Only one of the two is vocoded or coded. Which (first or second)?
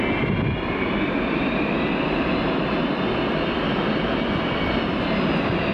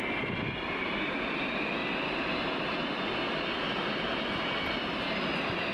second